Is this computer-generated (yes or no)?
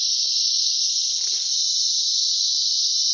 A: no